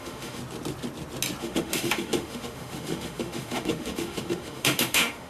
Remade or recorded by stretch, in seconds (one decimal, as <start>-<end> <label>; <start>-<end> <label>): 0.0-0.4 remade; 0.4-1.4 recorded; 1.4-5.3 remade